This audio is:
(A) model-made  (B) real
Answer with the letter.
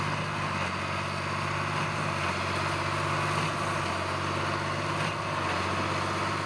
B